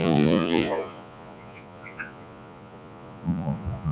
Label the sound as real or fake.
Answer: fake